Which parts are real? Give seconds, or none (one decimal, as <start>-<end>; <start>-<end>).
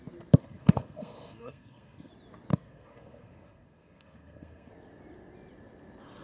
0.0-0.4; 2.1-2.5; 4.7-6.2